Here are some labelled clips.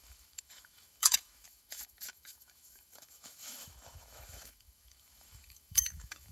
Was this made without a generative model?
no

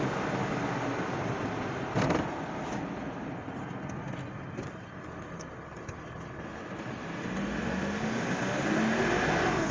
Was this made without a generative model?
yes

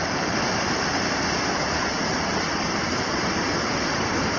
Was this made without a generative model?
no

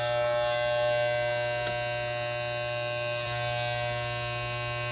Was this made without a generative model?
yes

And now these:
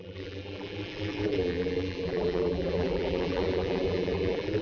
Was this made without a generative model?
no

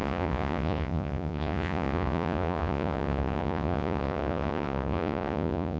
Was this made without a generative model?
no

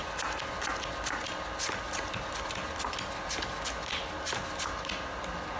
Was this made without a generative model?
yes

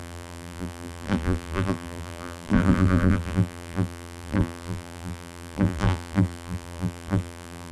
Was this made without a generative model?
no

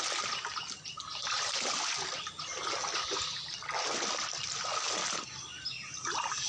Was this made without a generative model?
yes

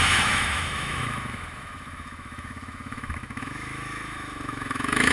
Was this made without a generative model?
no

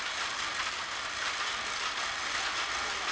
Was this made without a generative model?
yes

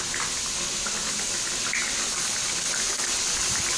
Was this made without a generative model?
yes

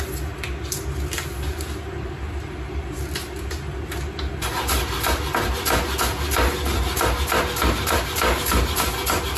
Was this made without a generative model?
yes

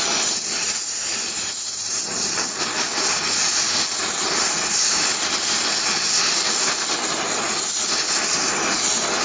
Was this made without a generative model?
yes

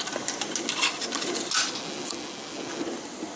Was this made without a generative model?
yes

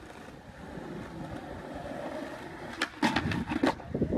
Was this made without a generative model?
yes